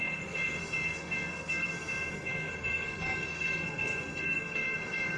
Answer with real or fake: fake